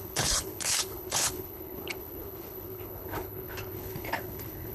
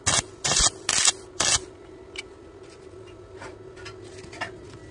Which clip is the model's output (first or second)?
first